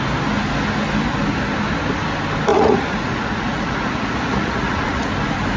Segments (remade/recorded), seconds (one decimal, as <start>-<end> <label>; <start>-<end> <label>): 0.0-2.5 recorded; 2.5-5.0 remade; 5.0-5.6 recorded